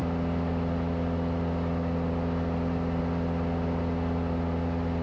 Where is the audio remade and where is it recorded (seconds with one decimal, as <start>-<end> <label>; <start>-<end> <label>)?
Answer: 0.0-5.0 recorded